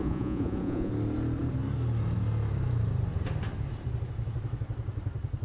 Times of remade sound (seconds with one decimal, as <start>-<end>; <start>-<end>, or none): 0.0-0.9